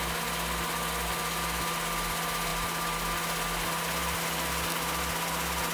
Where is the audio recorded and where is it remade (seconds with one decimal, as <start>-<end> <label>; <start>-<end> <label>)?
0.0-5.7 recorded